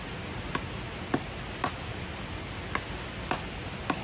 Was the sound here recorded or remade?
recorded